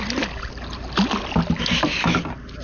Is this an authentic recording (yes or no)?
yes